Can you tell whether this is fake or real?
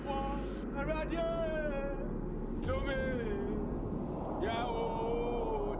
real